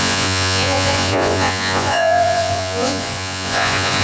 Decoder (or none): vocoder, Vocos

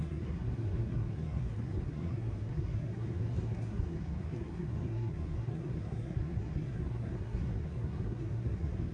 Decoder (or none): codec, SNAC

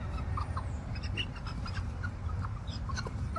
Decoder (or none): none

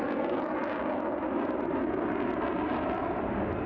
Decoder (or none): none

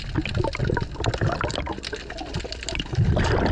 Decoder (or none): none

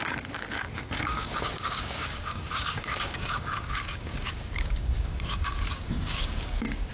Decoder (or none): codec, DAC